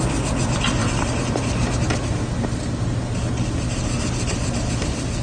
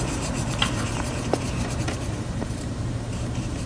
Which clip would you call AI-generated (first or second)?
second